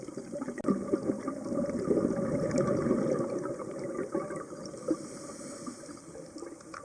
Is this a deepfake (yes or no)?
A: no